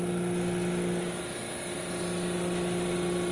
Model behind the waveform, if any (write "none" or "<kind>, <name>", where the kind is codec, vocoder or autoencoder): none